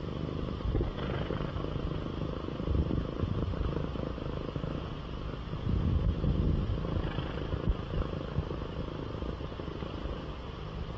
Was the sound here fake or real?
fake